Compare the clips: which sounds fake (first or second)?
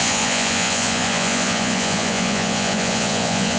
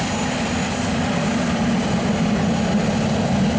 first